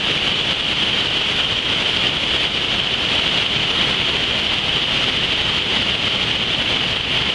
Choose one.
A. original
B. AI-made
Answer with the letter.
A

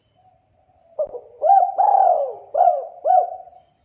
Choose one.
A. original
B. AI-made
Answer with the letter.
B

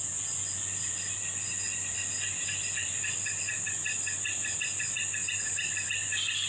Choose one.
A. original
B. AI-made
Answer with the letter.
A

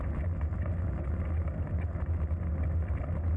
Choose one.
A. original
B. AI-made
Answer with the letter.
A